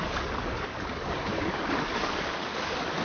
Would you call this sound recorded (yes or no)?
no